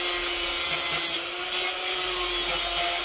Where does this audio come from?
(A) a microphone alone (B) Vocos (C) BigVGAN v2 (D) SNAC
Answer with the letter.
A